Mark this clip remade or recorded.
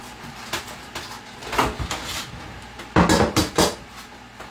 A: recorded